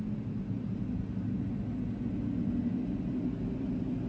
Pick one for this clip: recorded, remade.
recorded